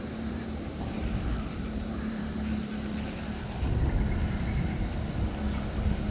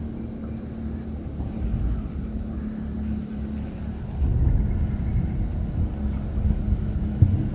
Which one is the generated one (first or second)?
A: first